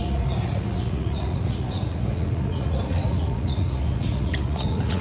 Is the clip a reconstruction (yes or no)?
yes